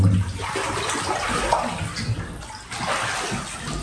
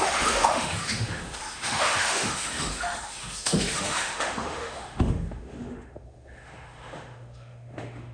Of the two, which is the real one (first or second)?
first